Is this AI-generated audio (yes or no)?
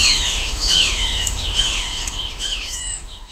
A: yes